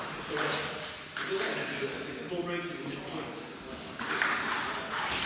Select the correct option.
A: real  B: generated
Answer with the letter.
A